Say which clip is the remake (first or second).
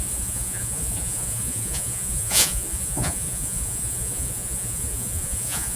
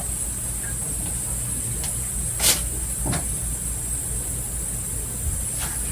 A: first